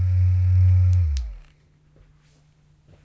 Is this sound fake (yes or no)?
no